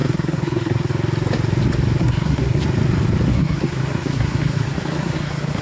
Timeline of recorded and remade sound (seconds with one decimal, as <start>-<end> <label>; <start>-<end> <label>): 0.0-0.9 remade; 0.9-2.0 recorded; 2.0-2.6 remade; 2.6-3.3 recorded; 3.3-5.6 remade